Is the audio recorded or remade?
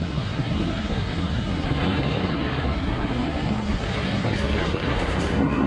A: remade